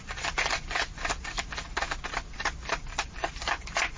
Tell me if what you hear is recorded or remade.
recorded